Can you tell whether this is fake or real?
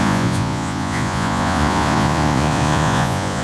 fake